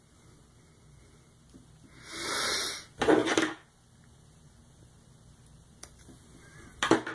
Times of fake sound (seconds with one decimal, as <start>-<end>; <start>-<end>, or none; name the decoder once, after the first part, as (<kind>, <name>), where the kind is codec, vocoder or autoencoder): none